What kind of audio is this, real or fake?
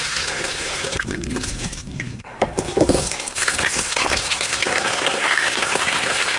fake